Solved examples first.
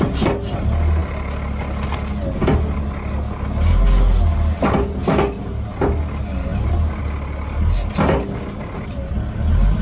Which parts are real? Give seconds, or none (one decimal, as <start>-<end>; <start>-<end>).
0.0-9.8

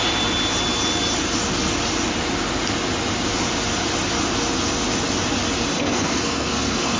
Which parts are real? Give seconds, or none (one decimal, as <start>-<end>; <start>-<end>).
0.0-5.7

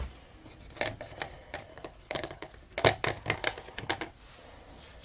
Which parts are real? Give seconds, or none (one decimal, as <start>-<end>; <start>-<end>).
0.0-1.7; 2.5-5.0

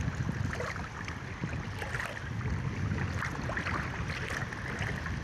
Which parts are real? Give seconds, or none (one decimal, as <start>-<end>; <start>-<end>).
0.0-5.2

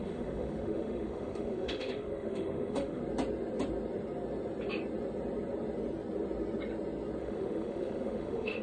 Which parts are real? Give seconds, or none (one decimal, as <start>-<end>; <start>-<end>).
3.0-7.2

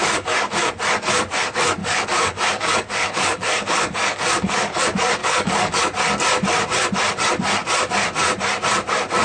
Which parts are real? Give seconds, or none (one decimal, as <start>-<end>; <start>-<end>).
0.7-1.8; 4.8-5.2; 5.8-9.2